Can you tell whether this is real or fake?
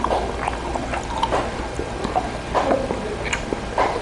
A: real